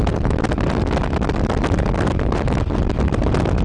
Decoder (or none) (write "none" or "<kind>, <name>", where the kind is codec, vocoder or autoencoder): none